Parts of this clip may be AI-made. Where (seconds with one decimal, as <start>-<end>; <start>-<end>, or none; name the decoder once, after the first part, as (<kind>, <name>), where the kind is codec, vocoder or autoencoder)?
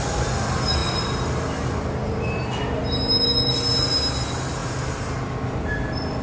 none